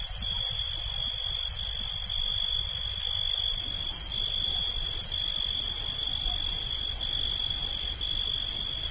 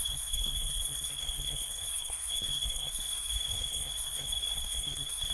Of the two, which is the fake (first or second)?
second